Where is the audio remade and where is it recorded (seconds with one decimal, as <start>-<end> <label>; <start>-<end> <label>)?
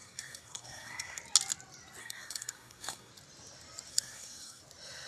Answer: 0.0-1.2 remade; 1.2-2.0 recorded; 2.0-3.1 remade; 3.1-3.9 recorded; 3.9-4.6 remade; 4.6-5.1 recorded